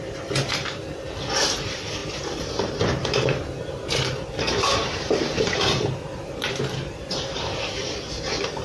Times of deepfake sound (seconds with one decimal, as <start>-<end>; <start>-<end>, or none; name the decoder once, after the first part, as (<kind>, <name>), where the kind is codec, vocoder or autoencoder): 0.0-0.8 (vocoder, BigVGAN v2); 1.4-8.6